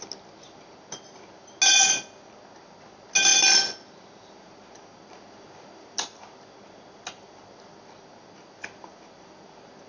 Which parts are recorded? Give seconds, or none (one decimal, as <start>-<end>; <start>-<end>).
0.0-9.9